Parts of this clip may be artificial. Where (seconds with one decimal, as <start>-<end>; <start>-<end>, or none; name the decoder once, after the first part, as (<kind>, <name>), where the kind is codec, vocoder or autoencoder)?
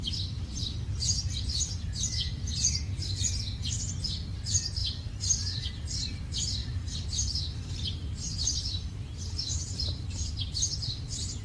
4.8-5.7 (vocoder, BigVGAN v2); 6.6-10.3